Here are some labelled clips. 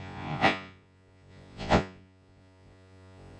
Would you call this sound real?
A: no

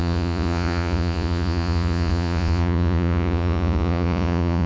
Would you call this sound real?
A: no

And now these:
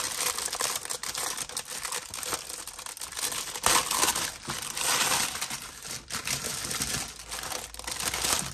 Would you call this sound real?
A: yes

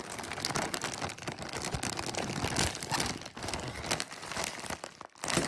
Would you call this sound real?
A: yes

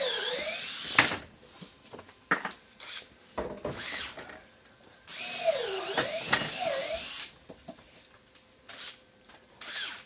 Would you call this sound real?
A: yes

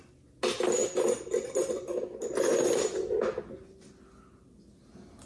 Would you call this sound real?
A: yes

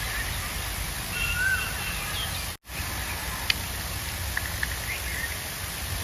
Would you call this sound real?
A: yes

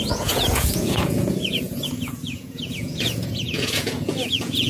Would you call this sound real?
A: no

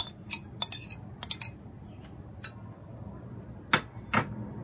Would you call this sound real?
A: yes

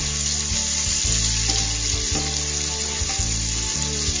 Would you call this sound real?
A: yes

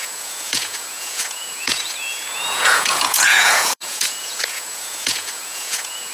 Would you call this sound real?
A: no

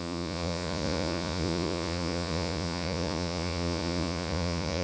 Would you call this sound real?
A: no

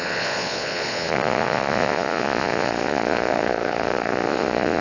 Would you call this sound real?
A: no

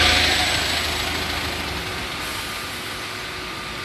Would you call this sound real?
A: yes